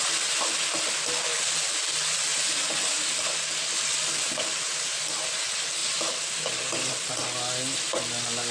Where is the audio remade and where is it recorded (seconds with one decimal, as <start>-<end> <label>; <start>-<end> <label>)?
0.0-8.5 recorded